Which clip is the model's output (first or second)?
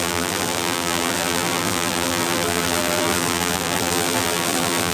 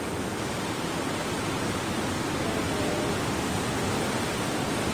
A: first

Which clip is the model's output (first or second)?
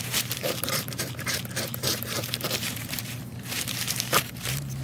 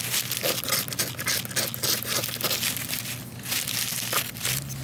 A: first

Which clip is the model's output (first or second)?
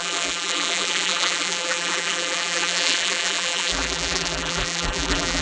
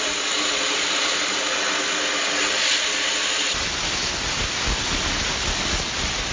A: first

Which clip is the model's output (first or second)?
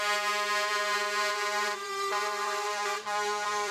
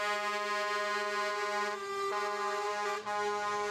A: first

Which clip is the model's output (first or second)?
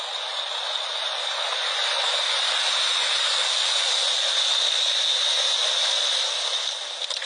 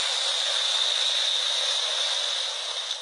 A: first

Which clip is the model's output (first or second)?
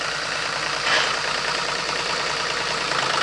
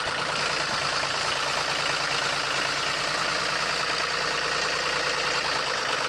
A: first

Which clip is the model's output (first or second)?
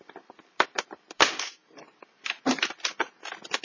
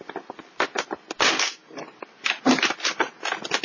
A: first